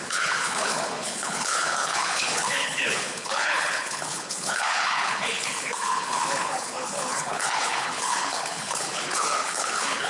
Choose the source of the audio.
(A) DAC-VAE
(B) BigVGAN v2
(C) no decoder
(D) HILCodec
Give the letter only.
D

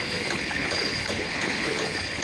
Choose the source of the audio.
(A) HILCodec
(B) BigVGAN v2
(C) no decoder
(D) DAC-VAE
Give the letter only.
A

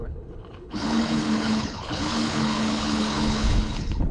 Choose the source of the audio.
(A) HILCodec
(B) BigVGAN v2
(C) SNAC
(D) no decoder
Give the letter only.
A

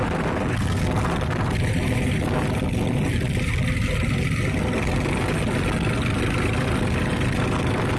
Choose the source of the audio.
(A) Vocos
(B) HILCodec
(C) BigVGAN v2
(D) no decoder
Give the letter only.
D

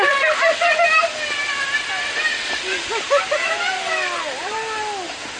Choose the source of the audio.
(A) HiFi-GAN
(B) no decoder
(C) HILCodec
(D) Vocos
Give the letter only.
B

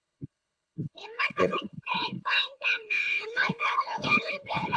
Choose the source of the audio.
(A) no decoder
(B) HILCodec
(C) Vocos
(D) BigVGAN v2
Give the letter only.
B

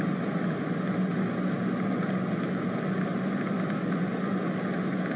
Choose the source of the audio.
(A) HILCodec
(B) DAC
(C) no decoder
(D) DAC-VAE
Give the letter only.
C